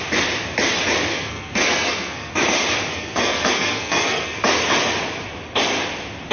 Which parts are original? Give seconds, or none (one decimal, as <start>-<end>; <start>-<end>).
0.0-1.1; 2.3-2.9; 4.4-6.3